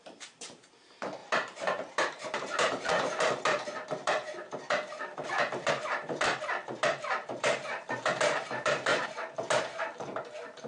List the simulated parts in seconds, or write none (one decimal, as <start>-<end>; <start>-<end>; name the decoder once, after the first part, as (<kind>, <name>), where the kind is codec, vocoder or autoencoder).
0.0-10.7 (vocoder, BigVGAN v2)